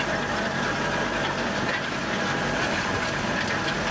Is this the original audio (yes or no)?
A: no